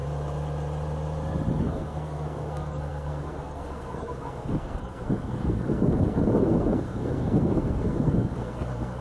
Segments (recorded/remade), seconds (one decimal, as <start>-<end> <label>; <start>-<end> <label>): 0.0-1.6 recorded; 1.6-9.0 remade